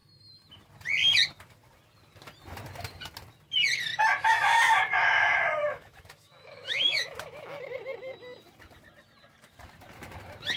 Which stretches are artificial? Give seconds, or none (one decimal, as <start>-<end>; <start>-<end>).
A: 5.6-7.6